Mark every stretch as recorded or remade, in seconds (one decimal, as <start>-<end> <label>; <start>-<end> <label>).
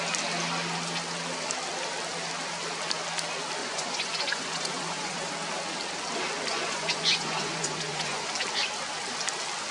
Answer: 0.0-3.6 recorded; 3.6-5.3 remade; 5.3-6.5 recorded; 6.5-8.3 remade; 8.3-9.7 recorded